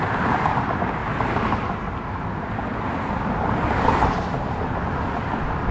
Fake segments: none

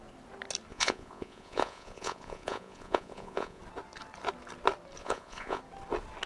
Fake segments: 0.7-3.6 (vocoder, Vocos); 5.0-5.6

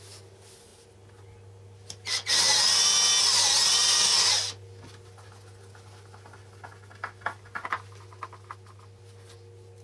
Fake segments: none

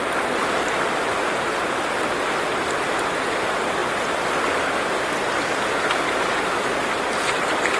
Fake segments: none

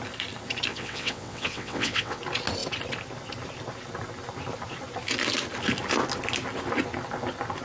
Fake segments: 0.7-2.2 (vocoder, WaveNeXt)

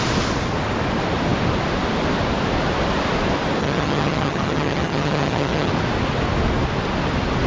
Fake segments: 3.6-5.7 (vocoder, HiFi-GAN)

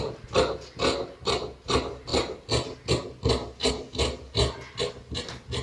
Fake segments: none